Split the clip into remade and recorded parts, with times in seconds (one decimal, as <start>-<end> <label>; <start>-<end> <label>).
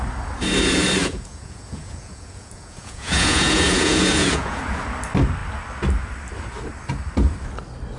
0.0-1.0 recorded; 1.0-4.6 remade; 4.6-8.0 recorded